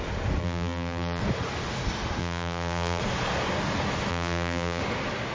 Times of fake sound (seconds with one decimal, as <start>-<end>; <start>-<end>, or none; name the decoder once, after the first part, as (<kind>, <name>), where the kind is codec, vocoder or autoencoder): 0.4-1.2 (vocoder, BigVGAN v2); 2.2-3.0; 4.1-4.8